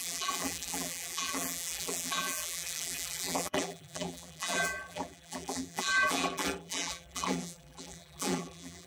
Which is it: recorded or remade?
remade